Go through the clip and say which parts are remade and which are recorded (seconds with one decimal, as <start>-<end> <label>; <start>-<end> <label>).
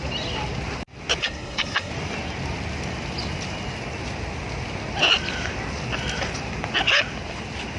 0.0-1.2 recorded; 1.2-1.9 remade; 1.9-7.8 recorded